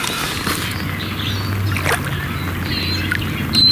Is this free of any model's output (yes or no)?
yes